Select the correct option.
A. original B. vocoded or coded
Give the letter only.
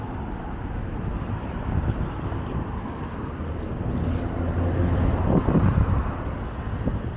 A